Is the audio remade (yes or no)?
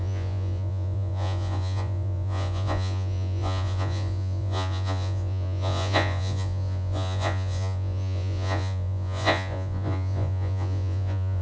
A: yes